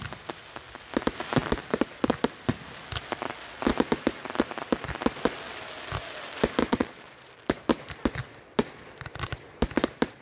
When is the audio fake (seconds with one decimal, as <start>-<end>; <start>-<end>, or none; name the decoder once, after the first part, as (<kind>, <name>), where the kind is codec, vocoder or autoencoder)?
6.7-7.3 (vocoder, Vocos)